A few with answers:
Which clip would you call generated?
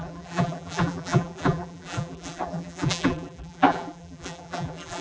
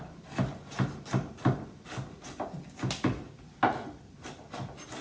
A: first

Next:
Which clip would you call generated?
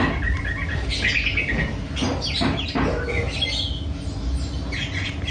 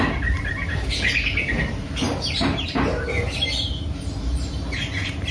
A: second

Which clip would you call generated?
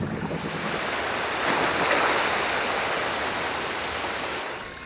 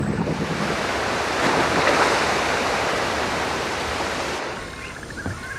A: second